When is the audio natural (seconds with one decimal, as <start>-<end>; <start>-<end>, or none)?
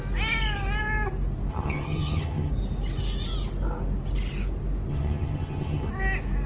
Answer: 0.0-1.5; 2.5-4.9; 5.9-6.5